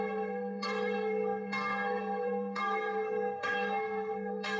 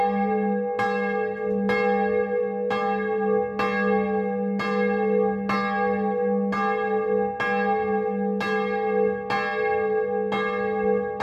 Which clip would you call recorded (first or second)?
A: second